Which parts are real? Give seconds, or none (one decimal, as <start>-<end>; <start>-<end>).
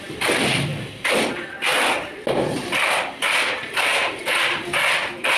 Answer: 0.0-5.4